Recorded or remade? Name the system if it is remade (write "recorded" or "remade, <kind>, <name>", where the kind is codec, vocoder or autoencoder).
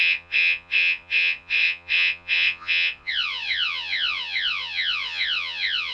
remade, vocoder, Vocos